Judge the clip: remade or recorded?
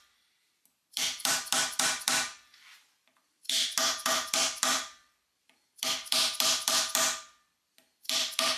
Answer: remade